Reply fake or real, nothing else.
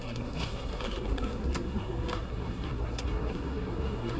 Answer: fake